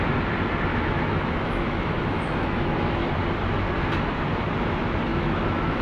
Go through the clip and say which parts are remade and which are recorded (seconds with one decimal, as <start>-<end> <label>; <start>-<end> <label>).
0.0-0.7 recorded; 0.7-3.1 remade; 3.1-5.1 recorded; 5.1-5.8 remade